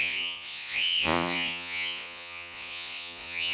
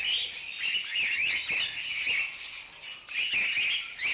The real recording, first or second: second